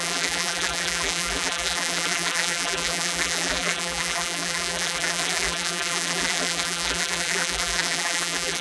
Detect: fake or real fake